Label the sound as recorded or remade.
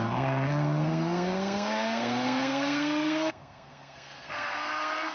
remade